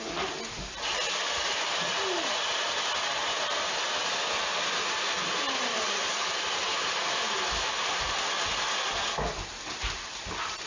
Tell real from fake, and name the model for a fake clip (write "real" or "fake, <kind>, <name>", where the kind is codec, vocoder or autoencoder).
real